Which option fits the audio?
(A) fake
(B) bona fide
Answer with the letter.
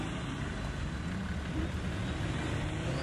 B